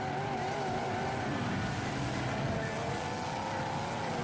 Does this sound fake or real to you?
real